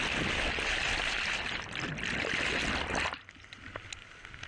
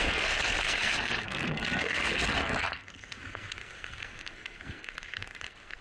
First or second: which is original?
first